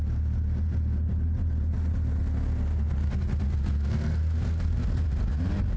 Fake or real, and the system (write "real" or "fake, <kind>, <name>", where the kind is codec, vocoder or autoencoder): real